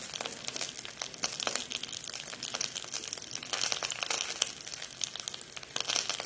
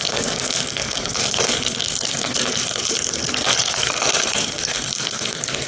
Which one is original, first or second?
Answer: first